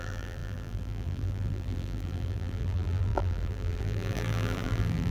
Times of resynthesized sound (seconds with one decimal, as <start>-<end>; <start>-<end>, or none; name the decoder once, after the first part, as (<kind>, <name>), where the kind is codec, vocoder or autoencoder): 0.0-5.1 (vocoder, BigVGAN v2)